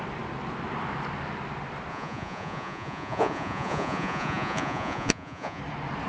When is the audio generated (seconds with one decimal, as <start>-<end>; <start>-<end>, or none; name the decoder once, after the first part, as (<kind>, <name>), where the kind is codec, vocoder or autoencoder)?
1.9-5.6 (vocoder, Vocos)